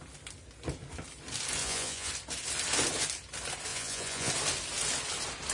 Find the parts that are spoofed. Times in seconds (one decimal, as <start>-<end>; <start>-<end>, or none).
1.6-2.1; 3.7-4.3